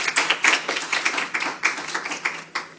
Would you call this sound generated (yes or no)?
no